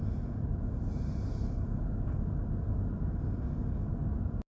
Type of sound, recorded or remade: recorded